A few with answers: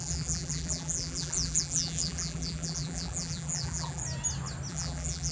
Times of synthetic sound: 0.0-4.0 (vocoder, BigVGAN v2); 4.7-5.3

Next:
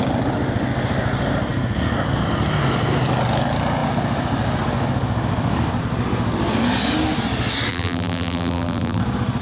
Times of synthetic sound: 7.7-9.0 (vocoder, BigVGAN v2)

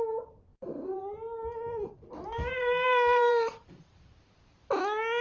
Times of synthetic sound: 0.5-1.0 (vocoder, BigVGAN v2); 2.6-4.2

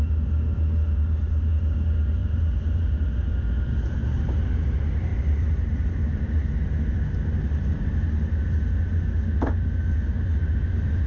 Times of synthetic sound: 2.2-3.3 (vocoder, BigVGAN v2); 5.1-7.0

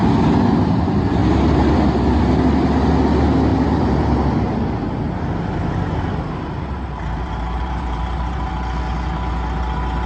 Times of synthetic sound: 1.2-1.7 (vocoder, BigVGAN v2); 3.5-8.5

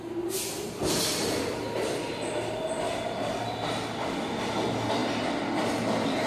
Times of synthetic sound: none